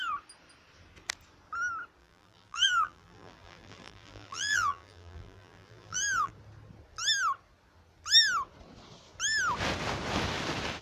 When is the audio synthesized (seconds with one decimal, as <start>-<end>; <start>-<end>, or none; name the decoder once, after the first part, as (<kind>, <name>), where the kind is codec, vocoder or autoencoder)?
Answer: 2.0-6.3 (vocoder, BigVGAN v2)